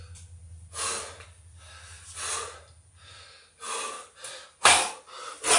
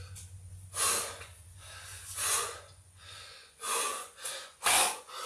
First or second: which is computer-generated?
second